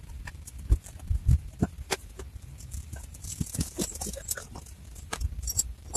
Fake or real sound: fake